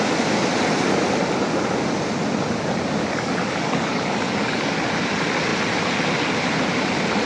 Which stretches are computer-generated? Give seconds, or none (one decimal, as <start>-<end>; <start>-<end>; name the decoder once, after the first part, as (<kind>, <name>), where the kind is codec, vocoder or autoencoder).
3.0-4.8 (codec, DAC)